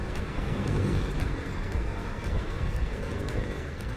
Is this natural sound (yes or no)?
no